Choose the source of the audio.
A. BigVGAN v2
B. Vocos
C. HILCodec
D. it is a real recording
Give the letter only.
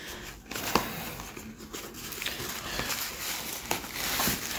D